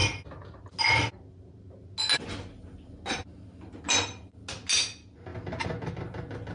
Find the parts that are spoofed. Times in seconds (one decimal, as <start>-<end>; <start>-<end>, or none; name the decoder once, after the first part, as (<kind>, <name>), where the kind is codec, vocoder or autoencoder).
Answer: none